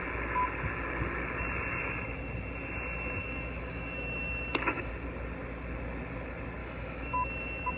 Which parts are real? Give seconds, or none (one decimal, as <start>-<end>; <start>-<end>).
0.0-3.2; 4.9-6.6